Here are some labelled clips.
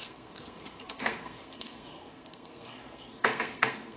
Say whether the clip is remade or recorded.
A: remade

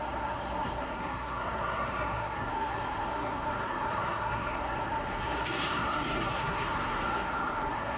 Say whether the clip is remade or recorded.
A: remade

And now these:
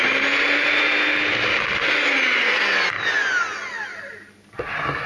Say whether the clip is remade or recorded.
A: recorded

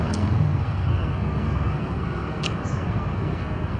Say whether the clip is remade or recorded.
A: remade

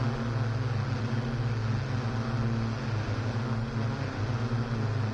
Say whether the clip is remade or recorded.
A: recorded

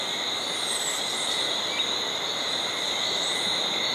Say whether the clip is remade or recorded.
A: recorded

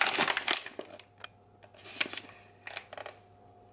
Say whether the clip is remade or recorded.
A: recorded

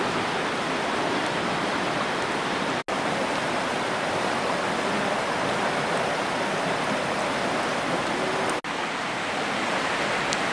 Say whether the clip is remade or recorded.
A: recorded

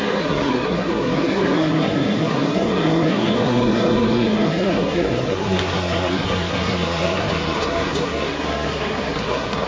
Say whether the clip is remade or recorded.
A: remade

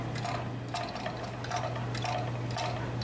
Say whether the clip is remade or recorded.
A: recorded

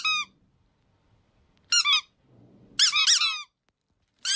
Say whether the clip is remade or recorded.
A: recorded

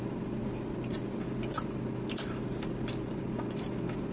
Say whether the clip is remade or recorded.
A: recorded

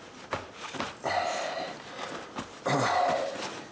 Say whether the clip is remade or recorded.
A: recorded